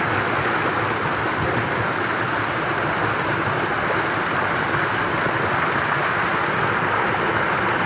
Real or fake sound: real